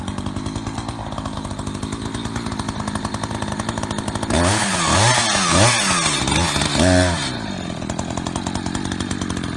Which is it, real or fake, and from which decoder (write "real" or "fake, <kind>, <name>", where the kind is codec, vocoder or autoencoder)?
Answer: real